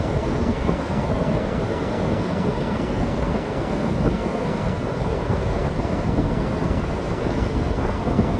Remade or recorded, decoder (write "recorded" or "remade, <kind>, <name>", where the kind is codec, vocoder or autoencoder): remade, codec, SNAC